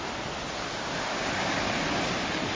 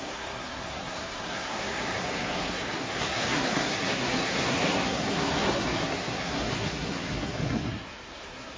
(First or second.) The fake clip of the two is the second